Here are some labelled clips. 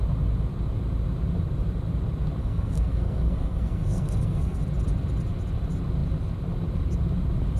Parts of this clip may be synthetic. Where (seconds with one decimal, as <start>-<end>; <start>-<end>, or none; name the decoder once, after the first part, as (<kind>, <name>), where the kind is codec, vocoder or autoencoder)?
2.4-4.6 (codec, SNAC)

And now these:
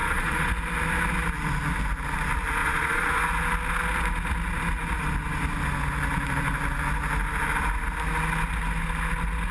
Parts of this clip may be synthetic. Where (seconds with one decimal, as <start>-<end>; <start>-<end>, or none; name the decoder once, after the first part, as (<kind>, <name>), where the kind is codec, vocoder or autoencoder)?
0.0-0.5 (vocoder, Vocos); 2.6-3.2

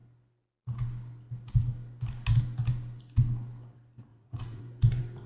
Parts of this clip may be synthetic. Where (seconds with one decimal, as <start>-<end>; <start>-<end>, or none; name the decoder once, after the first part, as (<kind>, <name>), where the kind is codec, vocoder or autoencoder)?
4.1-4.6 (vocoder, Vocos)

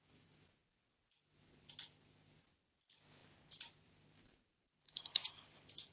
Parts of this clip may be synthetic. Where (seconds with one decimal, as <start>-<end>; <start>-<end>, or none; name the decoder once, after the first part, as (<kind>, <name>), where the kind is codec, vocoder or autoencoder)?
3.2-5.3 (vocoder, BigVGAN v2)

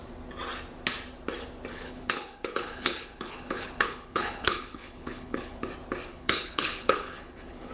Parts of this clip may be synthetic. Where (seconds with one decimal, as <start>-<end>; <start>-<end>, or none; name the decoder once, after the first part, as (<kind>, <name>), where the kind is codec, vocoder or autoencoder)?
1.7-5.6 (codec, HILCodec); 6.1-7.7

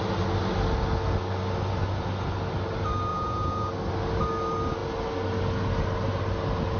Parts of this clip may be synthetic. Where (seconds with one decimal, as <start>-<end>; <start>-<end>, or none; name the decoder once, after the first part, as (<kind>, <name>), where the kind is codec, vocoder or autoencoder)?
3.1-3.7 (vocoder, Vocos)